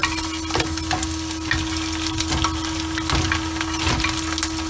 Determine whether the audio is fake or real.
real